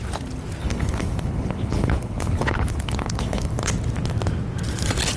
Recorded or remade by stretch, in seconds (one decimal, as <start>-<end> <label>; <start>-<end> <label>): 0.0-0.6 recorded; 0.6-3.7 remade; 3.7-5.2 recorded

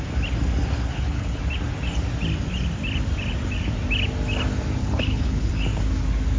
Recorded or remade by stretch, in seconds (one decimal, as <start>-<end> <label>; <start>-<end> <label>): 0.0-0.9 recorded; 0.9-1.4 remade; 1.4-4.8 recorded; 4.8-5.5 remade; 5.5-6.4 recorded

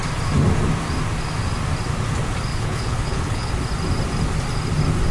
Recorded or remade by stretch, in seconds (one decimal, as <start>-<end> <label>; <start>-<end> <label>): 0.0-2.5 recorded; 2.5-3.5 remade; 3.5-5.1 recorded

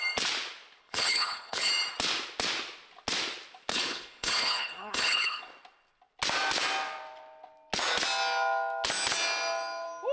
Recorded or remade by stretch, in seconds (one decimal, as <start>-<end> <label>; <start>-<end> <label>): 0.0-0.8 recorded; 0.8-1.7 remade; 1.7-3.7 recorded; 3.7-5.4 remade; 5.4-10.1 recorded

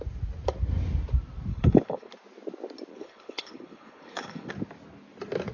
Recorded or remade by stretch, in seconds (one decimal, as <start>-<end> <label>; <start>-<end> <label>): 0.0-1.5 recorded; 1.5-2.1 remade; 2.1-2.9 recorded; 2.9-4.5 remade; 4.5-5.5 recorded

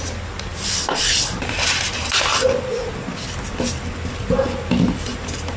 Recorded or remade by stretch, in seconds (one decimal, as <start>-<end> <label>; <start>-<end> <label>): 0.0-5.6 recorded